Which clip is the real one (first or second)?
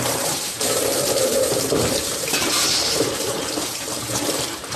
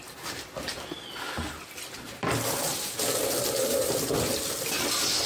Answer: second